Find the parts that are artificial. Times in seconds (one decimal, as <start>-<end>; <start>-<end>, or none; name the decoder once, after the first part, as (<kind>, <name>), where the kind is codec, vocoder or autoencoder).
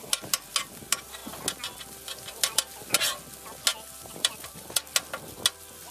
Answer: 3.7-4.7 (vocoder, BigVGAN v2)